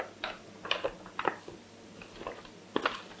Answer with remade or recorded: recorded